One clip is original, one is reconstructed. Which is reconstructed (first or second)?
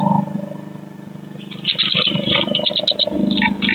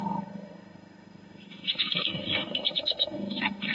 second